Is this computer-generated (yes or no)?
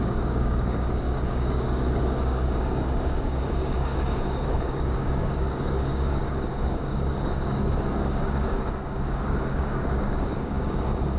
yes